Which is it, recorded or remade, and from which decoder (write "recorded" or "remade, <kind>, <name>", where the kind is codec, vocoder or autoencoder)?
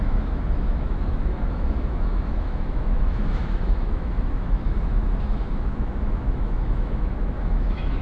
remade, autoencoder, DAC-VAE